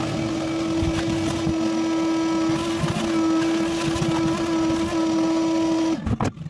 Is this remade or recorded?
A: recorded